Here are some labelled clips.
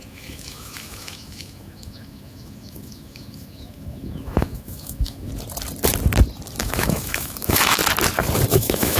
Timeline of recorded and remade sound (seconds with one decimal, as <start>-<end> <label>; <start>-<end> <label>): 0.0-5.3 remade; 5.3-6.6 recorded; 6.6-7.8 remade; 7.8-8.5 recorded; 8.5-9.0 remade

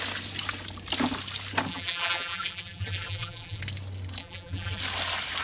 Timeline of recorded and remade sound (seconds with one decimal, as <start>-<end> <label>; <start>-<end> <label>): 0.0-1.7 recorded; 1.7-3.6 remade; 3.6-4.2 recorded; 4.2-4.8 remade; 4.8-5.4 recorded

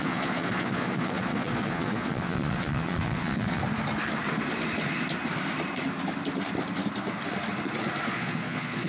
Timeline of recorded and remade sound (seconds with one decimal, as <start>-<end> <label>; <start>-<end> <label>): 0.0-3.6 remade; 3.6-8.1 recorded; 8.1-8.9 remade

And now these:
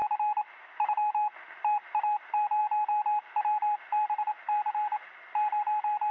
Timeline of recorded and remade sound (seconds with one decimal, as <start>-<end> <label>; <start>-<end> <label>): 0.0-1.6 recorded; 1.6-6.1 remade